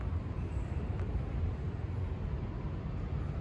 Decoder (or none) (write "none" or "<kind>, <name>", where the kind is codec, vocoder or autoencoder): none